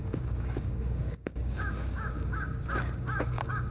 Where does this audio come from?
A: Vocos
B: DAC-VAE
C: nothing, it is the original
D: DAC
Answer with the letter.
D